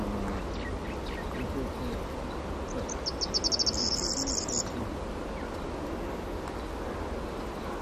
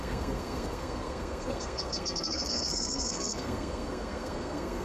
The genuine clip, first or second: first